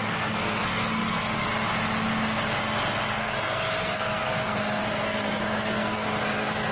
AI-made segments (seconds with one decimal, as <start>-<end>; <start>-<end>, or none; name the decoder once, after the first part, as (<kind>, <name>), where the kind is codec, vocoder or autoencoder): 0.0-1.5 (codec, SNAC); 3.1-6.7